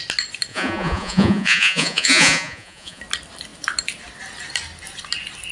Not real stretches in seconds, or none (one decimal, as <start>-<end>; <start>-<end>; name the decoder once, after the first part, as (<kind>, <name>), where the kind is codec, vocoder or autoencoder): 0.5-3.0 (vocoder, Vocos)